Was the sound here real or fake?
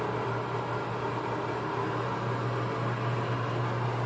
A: real